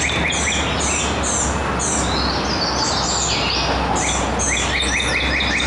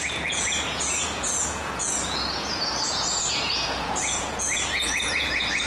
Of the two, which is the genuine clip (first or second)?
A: first